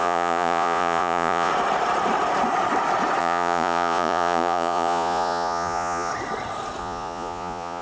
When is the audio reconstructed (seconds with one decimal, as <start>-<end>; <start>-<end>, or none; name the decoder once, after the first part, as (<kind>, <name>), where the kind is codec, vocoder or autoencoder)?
0.0-1.5 (vocoder, Vocos); 3.2-6.1; 6.8-7.8